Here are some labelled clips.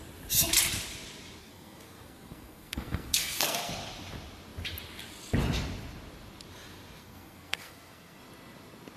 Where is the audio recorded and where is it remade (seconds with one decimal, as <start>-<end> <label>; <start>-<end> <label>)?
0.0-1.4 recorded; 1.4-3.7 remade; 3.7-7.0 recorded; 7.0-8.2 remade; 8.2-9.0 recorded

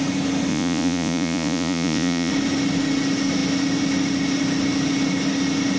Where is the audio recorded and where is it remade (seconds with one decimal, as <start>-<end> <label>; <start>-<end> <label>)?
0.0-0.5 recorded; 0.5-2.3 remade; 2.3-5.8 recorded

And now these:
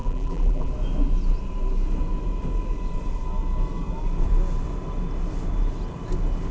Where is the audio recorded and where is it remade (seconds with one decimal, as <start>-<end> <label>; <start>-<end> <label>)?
0.0-0.7 remade; 0.7-6.5 recorded